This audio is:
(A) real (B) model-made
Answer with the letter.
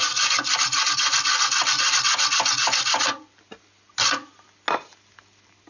A